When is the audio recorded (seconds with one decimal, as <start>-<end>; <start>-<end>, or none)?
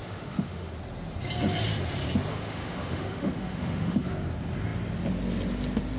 0.7-2.3; 4.1-6.0